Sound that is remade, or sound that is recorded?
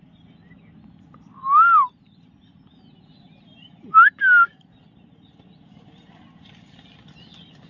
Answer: recorded